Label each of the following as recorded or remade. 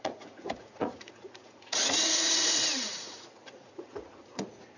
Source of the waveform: remade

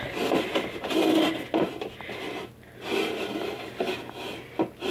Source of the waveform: recorded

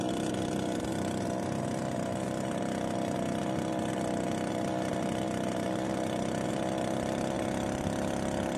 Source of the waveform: recorded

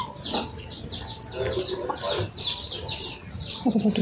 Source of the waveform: recorded